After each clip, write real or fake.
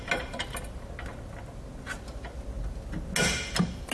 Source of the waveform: real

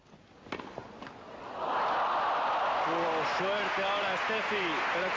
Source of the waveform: real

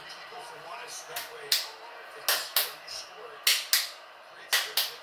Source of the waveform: real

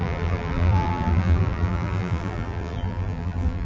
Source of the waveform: fake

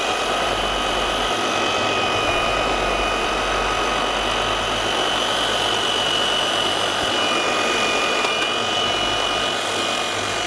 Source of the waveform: real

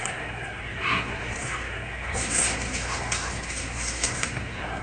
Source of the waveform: fake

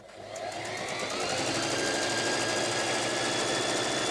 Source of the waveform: real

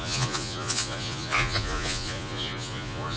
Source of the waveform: fake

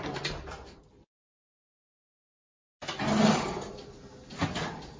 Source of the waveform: real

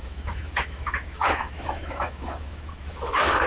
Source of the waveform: fake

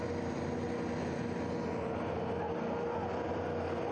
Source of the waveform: real